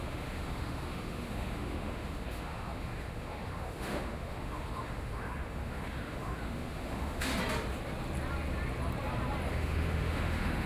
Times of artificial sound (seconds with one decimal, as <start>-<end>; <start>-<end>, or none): 0.0-7.3; 9.5-10.7